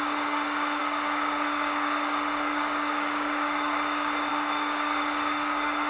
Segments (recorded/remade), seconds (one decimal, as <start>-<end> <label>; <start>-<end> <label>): 0.0-5.9 remade